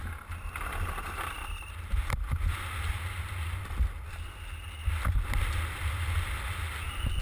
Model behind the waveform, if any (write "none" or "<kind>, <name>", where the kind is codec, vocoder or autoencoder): none